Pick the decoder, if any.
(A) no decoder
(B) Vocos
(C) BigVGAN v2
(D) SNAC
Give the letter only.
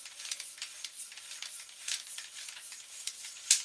A